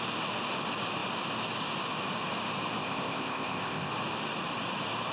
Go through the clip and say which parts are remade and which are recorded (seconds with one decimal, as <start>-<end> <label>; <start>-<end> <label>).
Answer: 0.0-2.8 recorded; 2.8-3.9 remade; 3.9-5.1 recorded